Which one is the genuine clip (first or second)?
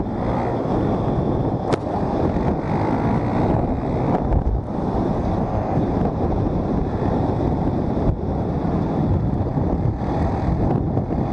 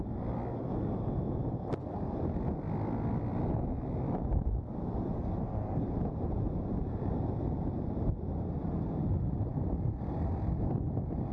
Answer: second